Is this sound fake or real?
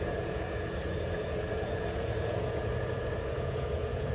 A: fake